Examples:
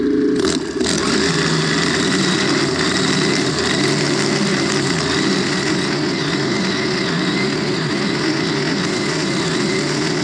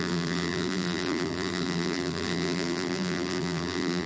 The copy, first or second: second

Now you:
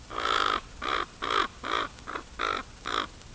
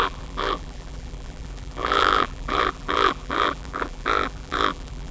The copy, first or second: second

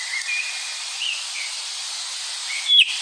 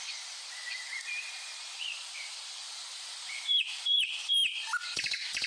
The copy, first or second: second